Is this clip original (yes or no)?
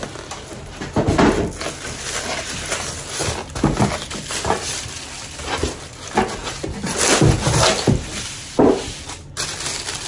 yes